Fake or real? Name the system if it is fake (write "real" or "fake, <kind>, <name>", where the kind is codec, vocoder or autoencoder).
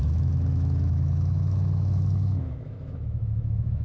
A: fake, autoencoder, DAC-VAE